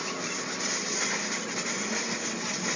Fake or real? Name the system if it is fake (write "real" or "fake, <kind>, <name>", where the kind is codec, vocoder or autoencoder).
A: real